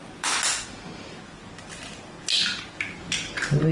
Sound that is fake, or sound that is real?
real